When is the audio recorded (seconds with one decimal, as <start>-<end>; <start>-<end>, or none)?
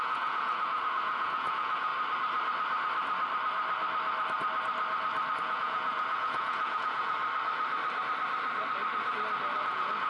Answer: 1.9-5.4; 7.2-9.6